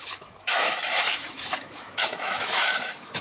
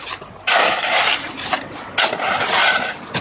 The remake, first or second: first